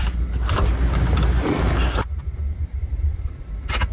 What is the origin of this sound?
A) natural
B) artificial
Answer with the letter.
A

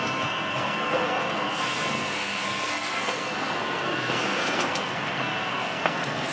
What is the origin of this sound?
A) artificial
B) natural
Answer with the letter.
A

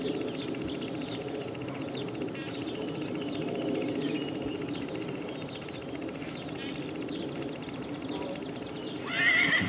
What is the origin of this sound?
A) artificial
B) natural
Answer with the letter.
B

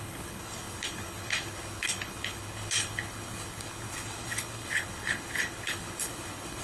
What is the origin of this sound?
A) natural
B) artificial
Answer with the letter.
B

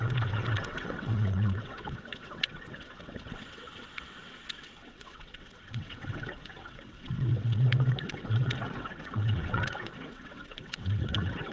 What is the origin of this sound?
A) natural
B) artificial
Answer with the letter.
B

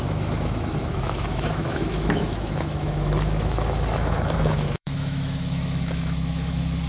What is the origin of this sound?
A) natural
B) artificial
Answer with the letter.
B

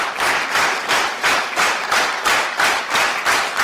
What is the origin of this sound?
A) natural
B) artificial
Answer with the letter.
B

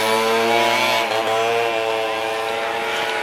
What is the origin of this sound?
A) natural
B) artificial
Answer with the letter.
A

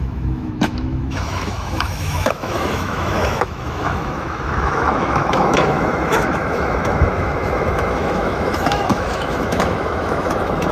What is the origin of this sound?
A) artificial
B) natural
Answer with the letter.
A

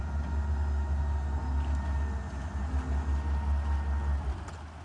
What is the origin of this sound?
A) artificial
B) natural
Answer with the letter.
B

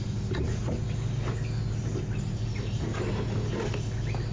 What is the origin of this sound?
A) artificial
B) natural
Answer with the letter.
B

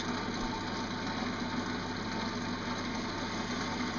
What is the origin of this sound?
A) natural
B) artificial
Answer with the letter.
A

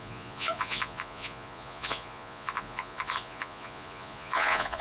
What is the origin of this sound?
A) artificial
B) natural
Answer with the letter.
A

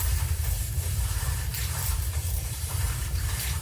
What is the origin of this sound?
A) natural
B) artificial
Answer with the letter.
B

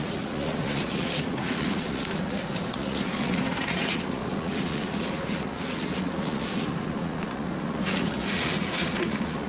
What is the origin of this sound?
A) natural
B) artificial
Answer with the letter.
B